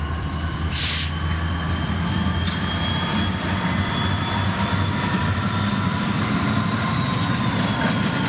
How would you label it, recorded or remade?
remade